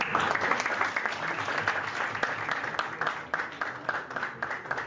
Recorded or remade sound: recorded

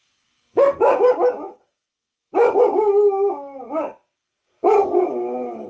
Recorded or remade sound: remade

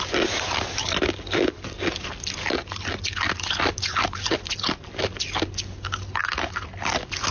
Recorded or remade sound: recorded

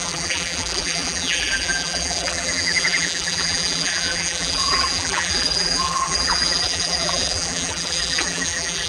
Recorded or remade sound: remade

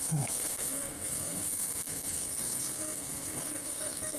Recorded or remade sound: remade